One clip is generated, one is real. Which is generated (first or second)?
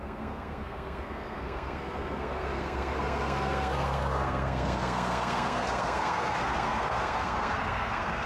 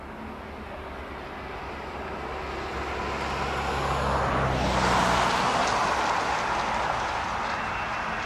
first